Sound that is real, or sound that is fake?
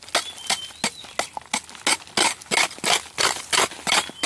real